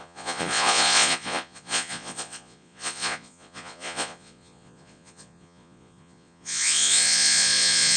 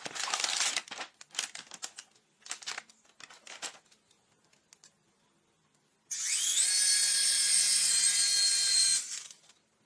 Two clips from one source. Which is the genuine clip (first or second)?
second